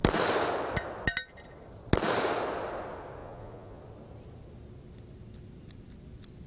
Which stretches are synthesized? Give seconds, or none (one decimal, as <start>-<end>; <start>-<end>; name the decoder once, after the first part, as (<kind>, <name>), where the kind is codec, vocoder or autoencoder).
3.2-3.8 (vocoder, Vocos)

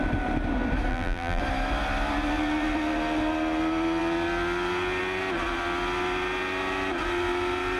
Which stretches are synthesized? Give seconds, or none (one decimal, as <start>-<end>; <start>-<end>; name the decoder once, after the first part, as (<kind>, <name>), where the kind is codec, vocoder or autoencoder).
0.9-1.4 (vocoder, BigVGAN v2)

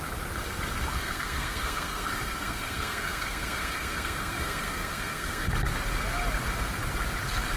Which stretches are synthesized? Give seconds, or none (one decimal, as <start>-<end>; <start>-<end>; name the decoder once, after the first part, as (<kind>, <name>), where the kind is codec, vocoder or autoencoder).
0.9-5.5 (codec, SNAC)

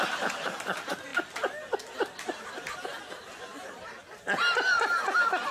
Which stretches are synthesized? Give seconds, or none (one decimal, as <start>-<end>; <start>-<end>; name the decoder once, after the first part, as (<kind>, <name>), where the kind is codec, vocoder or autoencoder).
none

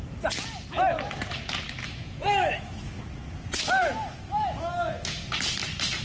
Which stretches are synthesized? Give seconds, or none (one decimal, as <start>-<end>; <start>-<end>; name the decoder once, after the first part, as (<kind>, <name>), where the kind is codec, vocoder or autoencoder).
1.8-3.0 (autoencoder, DAC-VAE); 3.8-5.3

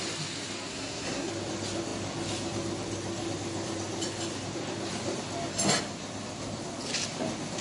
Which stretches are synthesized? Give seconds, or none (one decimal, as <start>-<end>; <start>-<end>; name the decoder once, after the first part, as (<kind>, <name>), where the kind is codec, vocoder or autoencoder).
0.7-1.3 (codec, SNAC)

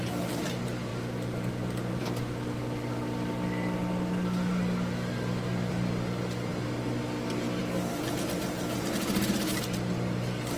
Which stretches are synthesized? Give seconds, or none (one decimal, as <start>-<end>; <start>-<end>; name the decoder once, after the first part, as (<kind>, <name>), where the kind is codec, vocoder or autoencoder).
none